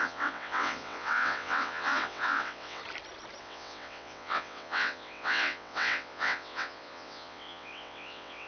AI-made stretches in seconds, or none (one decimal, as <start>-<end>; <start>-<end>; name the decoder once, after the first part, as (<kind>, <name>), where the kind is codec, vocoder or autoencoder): 0.0-2.8 (vocoder, WaveNeXt); 3.4-8.5